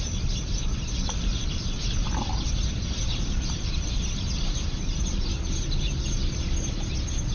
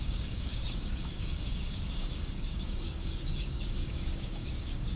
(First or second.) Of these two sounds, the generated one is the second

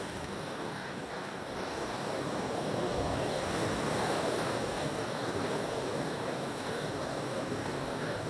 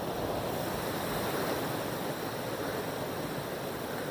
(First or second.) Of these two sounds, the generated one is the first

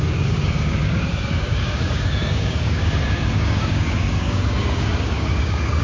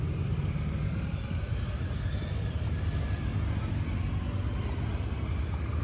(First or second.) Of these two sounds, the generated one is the first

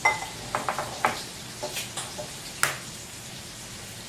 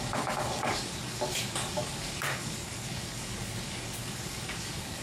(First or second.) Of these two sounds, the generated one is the second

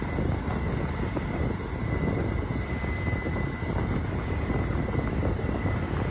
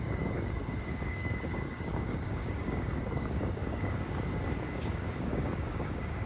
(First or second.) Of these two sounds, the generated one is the second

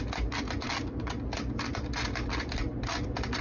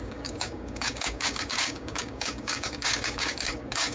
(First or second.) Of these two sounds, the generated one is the second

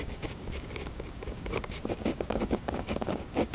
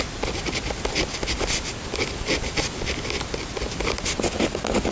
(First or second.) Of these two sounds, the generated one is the first